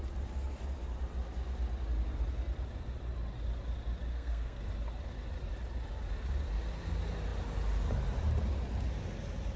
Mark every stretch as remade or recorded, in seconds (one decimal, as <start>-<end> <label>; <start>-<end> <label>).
0.0-4.1 recorded; 4.1-4.6 remade; 4.6-9.6 recorded